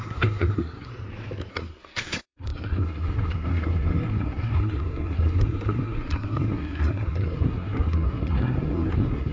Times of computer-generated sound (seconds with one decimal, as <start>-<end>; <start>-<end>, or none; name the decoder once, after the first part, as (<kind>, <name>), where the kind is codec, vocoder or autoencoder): 0.0-0.9 (codec, SNAC); 1.5-9.3